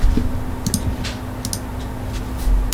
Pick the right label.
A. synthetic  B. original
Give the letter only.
B